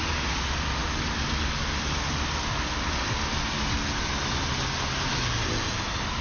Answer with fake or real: real